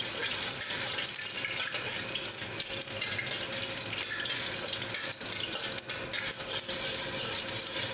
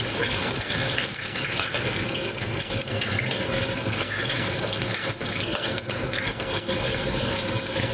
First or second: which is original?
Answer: first